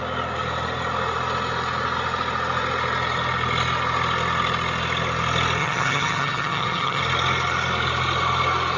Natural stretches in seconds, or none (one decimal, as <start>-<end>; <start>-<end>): 0.0-5.6; 7.0-8.8